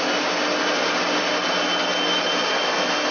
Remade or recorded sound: recorded